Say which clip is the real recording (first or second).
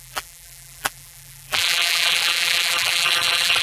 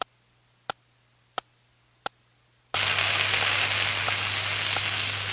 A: second